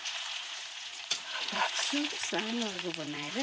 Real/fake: fake